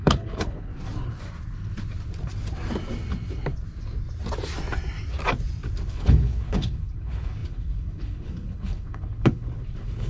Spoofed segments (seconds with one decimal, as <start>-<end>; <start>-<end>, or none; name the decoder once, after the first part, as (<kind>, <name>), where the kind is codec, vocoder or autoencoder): 0.0-0.7 (codec, HILCodec); 5.9-10.1